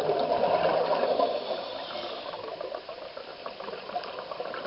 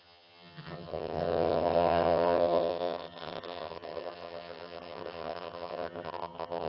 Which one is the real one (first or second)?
first